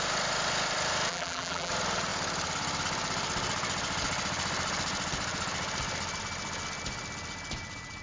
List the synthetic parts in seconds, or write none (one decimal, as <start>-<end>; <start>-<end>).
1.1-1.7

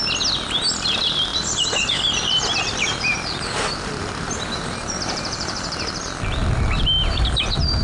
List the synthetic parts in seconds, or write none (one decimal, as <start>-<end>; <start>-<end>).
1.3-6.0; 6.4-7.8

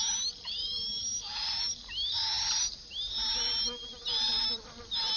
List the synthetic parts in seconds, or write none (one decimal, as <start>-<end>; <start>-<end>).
none

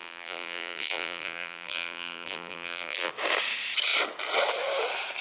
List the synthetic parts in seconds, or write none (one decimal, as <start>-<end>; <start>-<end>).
0.0-3.1

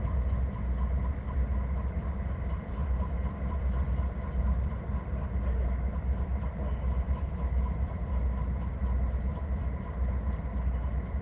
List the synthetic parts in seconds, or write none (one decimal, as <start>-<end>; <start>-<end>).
none

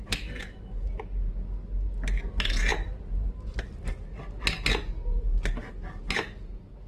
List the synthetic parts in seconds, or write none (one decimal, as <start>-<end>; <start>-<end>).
none

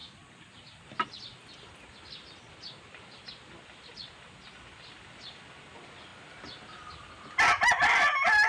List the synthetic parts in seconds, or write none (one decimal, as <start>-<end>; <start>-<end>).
none